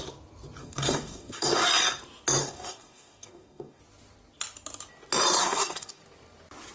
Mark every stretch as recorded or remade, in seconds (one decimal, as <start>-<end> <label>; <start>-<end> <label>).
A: 0.0-0.6 recorded; 0.6-1.7 remade; 1.7-2.4 recorded; 2.4-3.8 remade; 3.8-5.4 recorded; 5.4-6.0 remade; 6.0-6.7 recorded